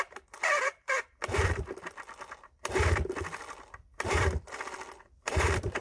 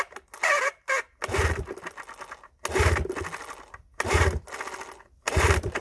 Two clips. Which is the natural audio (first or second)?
second